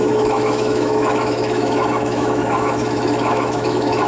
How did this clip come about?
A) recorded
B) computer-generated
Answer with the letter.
B